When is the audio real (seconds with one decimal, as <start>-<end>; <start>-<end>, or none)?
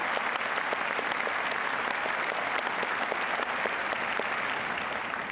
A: 0.0-5.3